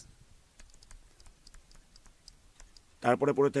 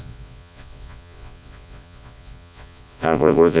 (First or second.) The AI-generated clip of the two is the second